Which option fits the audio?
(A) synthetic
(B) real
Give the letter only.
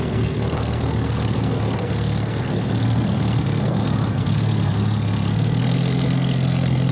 A